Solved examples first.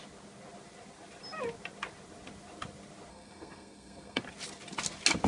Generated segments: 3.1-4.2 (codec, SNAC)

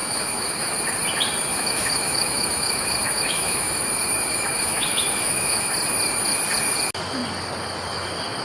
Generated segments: 0.0-0.7 (autoencoder, DAC-VAE); 1.5-3.8; 4.3-5.7

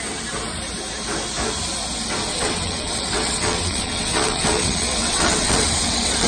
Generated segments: 2.3-6.3 (vocoder, WaveNeXt)

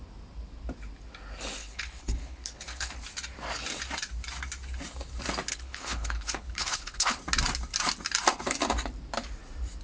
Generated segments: 1.6-2.9 (codec, HILCodec); 5.5-7.2

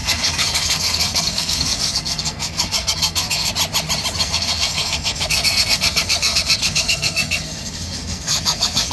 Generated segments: 0.0-3.5 (codec, SNAC); 4.2-8.9

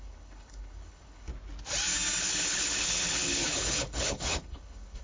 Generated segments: 0.0-1.3 (codec, HILCodec); 2.2-5.0

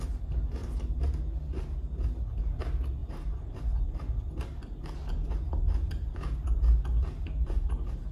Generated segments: 3.0-3.6 (vocoder, BigVGAN v2)

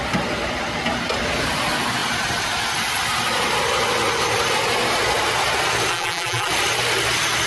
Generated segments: 5.9-6.5 (vocoder, BigVGAN v2)